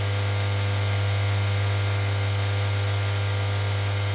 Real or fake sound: real